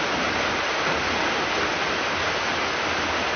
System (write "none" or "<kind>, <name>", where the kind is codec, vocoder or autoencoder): none